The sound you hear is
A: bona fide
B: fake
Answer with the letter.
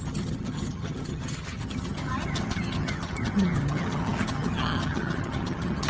B